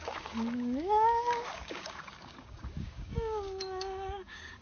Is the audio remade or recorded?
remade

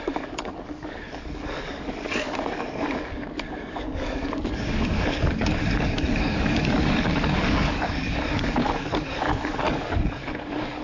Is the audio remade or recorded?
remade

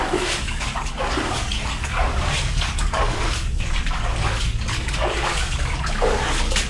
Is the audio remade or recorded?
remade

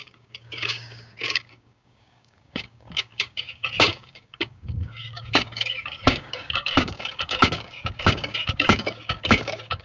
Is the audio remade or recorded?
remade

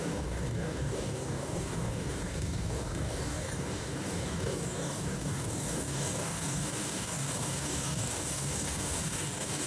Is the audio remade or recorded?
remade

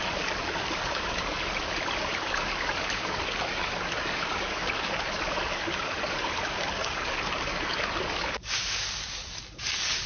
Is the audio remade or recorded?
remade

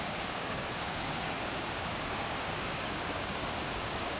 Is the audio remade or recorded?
remade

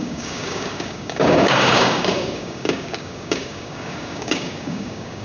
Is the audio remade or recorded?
remade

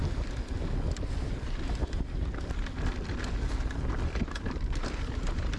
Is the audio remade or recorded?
recorded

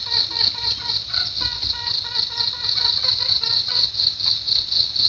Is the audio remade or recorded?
recorded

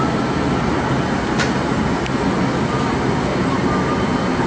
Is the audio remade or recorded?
recorded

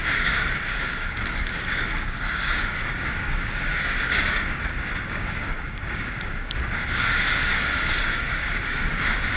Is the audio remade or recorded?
remade